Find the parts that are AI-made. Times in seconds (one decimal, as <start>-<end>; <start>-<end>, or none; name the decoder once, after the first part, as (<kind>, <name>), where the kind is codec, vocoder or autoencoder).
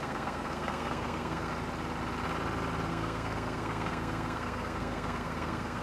0.0-1.5 (codec, SNAC); 2.9-5.8